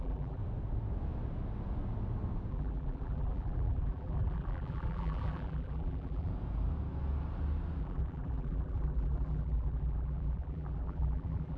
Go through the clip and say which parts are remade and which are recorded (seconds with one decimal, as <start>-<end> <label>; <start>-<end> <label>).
0.0-0.4 remade; 0.4-2.5 recorded; 2.5-6.3 remade; 6.3-7.8 recorded; 7.8-11.6 remade